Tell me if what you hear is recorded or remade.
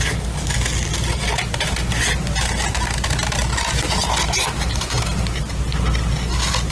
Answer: recorded